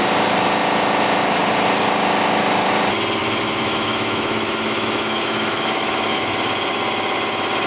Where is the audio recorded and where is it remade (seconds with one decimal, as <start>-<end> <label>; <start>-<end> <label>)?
0.0-3.2 recorded; 3.2-6.4 remade; 6.4-7.7 recorded